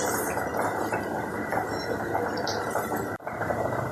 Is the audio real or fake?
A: fake